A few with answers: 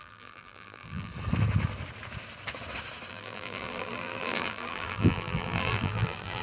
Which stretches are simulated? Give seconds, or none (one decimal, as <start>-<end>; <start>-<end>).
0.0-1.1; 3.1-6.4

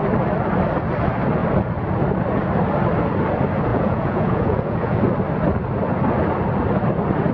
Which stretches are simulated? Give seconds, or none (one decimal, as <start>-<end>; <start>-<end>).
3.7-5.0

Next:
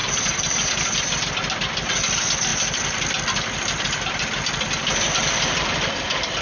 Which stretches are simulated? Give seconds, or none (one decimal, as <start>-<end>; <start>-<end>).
none

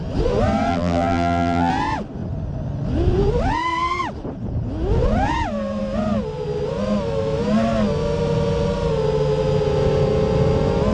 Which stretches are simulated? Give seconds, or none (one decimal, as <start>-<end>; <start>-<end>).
0.7-1.7